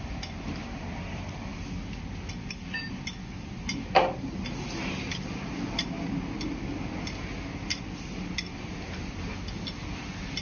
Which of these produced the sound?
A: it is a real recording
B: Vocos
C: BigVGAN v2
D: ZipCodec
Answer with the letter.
A